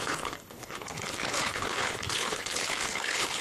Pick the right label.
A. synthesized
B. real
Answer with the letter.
A